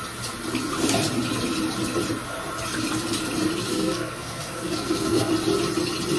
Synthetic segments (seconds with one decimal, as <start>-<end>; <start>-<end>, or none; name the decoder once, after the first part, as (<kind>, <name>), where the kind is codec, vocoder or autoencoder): 3.7-5.3 (codec, SNAC)